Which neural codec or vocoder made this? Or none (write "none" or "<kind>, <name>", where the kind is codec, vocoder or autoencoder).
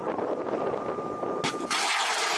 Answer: none